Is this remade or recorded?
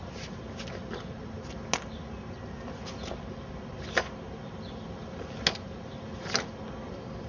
recorded